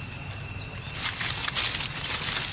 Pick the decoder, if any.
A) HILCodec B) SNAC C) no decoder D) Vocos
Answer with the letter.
C